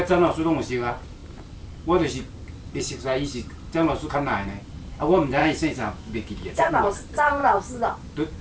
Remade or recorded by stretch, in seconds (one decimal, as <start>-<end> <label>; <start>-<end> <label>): 0.0-5.4 recorded; 5.4-6.7 remade; 6.7-8.4 recorded